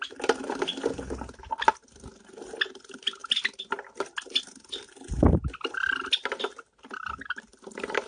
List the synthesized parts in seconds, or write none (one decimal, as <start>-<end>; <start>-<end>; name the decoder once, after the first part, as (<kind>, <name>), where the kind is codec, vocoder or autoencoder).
none